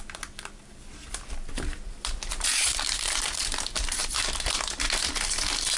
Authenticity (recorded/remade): remade